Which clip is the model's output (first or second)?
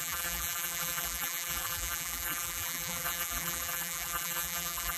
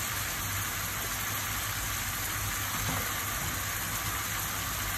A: first